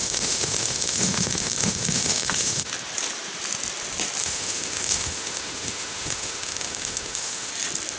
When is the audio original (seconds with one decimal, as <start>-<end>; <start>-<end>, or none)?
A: 2.7-4.2; 7.5-8.0

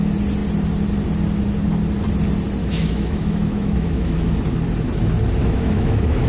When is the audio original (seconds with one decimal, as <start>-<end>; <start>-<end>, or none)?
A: 0.0-2.6; 4.4-5.4